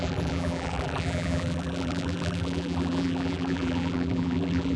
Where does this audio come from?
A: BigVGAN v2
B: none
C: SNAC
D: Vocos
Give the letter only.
A